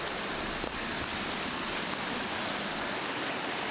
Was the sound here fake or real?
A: real